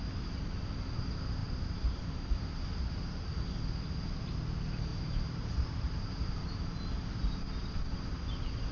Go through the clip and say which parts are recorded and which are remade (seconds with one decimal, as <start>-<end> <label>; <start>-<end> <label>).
0.0-1.4 recorded; 1.4-2.0 remade; 2.0-4.9 recorded; 4.9-7.4 remade; 7.4-8.7 recorded